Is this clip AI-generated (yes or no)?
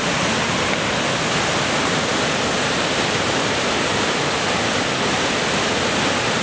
no